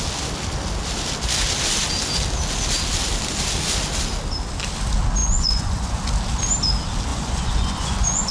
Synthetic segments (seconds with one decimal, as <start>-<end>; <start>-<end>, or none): 5.2-6.0; 7.1-8.3